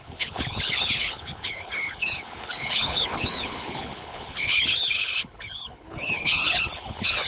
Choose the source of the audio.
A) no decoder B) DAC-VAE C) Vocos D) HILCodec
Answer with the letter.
D